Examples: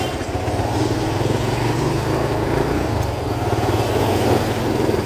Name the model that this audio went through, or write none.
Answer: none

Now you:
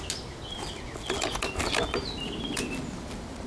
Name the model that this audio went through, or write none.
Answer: none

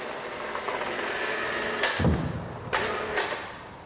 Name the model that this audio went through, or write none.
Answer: none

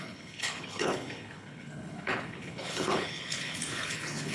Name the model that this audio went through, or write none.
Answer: codec, HILCodec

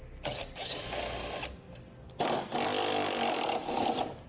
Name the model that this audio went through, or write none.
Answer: none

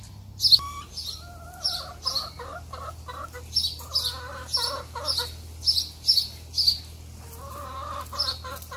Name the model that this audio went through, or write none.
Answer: none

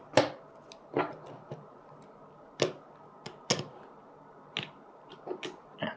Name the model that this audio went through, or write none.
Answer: none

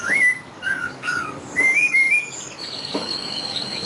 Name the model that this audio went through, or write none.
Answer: codec, DAC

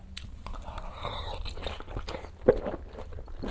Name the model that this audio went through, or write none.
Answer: none